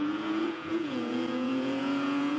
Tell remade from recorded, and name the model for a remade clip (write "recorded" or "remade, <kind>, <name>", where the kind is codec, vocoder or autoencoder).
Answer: remade, vocoder, Vocos